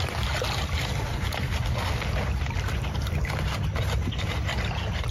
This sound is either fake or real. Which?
real